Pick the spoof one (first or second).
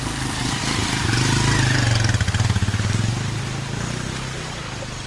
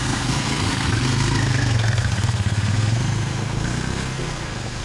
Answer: second